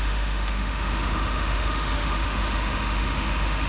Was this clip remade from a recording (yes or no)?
yes